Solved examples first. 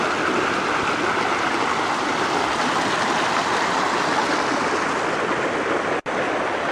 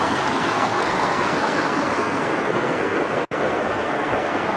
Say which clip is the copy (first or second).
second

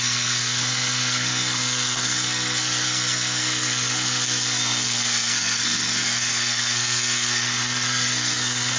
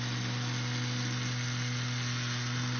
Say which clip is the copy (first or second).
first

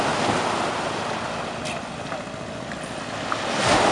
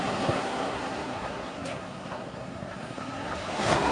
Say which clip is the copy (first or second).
second